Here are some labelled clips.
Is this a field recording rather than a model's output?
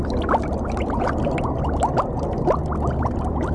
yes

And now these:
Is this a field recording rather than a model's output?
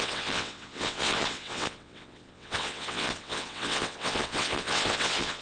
no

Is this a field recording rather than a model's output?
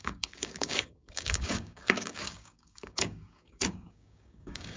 no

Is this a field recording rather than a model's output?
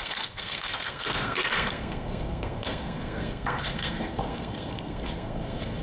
no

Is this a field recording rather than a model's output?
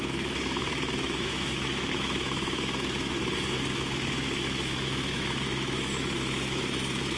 no